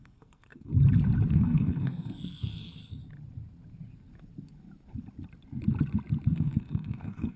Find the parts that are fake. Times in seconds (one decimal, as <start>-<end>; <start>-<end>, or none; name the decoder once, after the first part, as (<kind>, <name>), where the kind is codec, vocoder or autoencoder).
0.0-0.7 (codec, SNAC); 1.3-3.0; 6.3-7.4